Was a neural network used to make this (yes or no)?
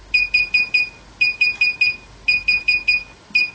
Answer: no